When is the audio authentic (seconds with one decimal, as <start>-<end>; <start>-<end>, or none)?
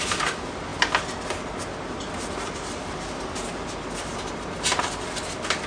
0.0-5.7